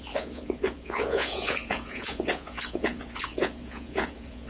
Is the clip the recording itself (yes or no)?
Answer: no